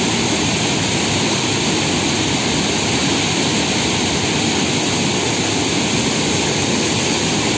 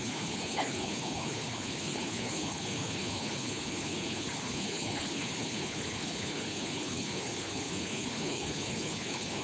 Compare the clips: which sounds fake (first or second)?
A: second